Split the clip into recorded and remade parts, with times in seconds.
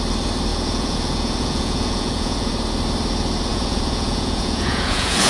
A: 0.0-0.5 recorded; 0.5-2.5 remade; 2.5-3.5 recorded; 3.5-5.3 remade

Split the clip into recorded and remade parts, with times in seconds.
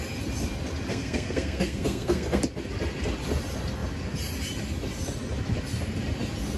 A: 0.0-0.9 recorded; 0.9-2.4 remade; 2.4-6.6 recorded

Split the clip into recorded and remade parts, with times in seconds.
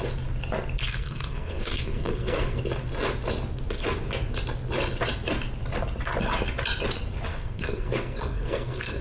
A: 0.0-0.8 recorded; 0.8-2.6 remade; 2.6-7.3 recorded; 7.3-9.0 remade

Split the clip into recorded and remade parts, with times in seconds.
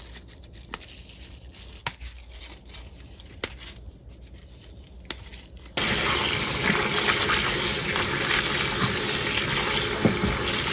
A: 0.0-1.8 recorded; 1.8-2.4 remade; 2.4-10.7 recorded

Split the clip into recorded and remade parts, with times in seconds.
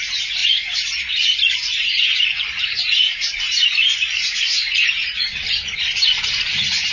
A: 0.0-0.4 recorded; 0.4-4.4 remade; 4.4-6.9 recorded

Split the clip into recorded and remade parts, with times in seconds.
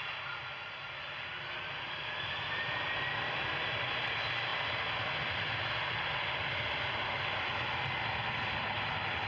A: 0.0-9.3 recorded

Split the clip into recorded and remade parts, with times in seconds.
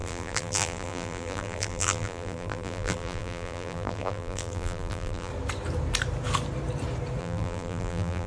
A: 0.0-5.3 remade; 5.3-7.2 recorded; 7.2-8.3 remade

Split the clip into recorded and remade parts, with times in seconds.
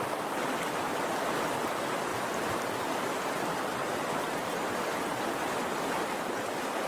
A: 0.0-2.1 recorded; 2.1-2.8 remade; 2.8-3.7 recorded; 3.7-4.6 remade; 4.6-6.9 recorded